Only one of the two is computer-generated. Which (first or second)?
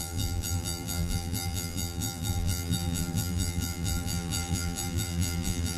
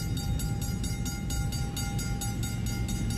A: first